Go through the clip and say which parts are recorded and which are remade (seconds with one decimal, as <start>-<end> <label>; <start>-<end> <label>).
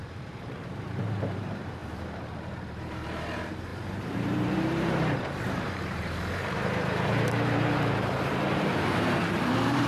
0.0-9.9 remade